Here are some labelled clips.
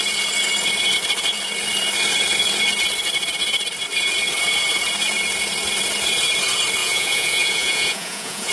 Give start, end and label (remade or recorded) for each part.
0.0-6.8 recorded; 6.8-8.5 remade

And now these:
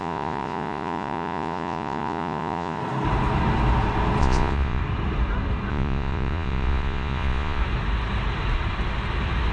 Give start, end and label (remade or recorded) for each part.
0.0-2.8 remade; 2.8-4.2 recorded; 4.2-4.8 remade; 4.8-5.7 recorded; 5.7-7.6 remade; 7.6-9.5 recorded